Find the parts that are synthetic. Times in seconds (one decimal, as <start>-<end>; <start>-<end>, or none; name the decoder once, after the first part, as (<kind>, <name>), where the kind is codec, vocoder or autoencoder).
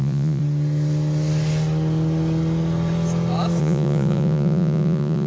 0.0-0.4 (vocoder, Vocos); 3.6-5.3